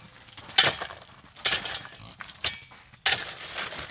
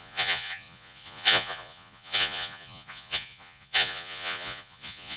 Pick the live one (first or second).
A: first